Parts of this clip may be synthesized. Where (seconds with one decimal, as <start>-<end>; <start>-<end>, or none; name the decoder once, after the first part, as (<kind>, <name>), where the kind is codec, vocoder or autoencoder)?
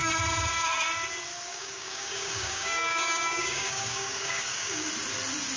1.5-4.9 (codec, DAC)